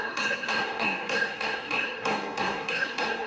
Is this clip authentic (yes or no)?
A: no